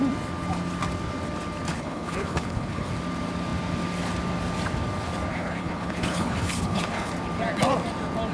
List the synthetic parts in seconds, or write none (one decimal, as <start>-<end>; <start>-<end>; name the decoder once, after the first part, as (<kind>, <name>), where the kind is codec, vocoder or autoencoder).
1.7-2.9 (codec, HILCodec); 5.3-7.1